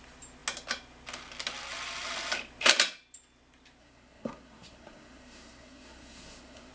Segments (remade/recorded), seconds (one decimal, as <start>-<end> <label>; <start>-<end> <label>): 0.0-3.8 recorded; 3.8-6.7 remade